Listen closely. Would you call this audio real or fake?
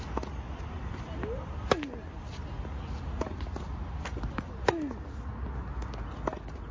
real